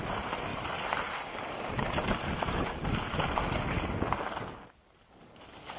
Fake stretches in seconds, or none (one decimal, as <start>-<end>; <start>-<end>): none